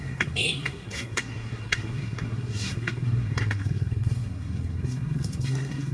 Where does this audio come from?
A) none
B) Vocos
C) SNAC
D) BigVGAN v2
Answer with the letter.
C